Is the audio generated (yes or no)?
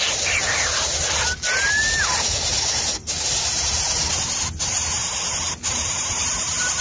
no